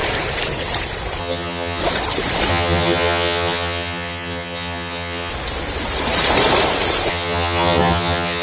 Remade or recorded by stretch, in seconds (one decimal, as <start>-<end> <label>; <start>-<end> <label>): 0.0-1.2 recorded; 1.2-1.8 remade; 1.8-2.5 recorded; 2.5-5.3 remade; 5.3-7.1 recorded; 7.1-8.4 remade

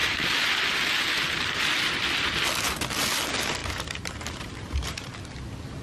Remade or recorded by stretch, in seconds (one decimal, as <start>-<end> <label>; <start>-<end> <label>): 0.0-0.6 remade; 0.6-3.6 recorded; 3.6-5.2 remade; 5.2-5.8 recorded

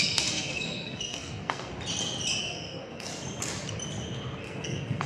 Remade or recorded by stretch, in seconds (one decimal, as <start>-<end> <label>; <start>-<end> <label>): 0.0-1.7 remade; 1.7-2.4 recorded; 2.4-3.1 remade; 3.1-4.4 recorded; 4.4-5.1 remade

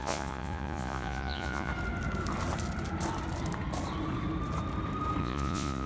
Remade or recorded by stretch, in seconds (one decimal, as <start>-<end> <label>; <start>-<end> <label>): 0.0-1.7 remade; 1.7-5.2 recorded; 5.2-5.9 remade

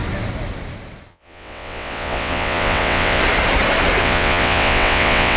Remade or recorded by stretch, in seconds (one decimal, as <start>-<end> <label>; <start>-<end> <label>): 0.0-1.1 recorded; 1.1-3.2 remade; 3.2-4.0 recorded; 4.0-5.4 remade

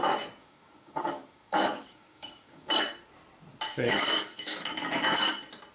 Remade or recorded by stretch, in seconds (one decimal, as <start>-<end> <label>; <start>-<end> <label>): 0.0-0.4 recorded; 0.4-2.8 remade; 2.8-3.7 recorded; 3.7-5.3 remade; 5.3-5.7 recorded

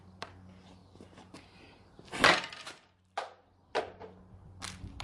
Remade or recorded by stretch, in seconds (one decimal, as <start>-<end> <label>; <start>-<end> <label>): 0.0-5.0 recorded

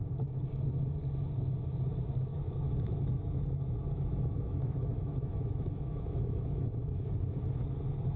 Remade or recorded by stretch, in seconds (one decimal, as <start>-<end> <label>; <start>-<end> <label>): 0.0-2.3 recorded; 2.3-7.1 remade; 7.1-8.2 recorded